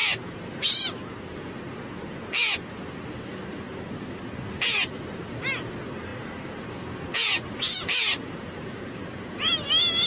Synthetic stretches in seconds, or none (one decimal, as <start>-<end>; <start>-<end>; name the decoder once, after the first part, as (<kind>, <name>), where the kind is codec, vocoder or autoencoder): none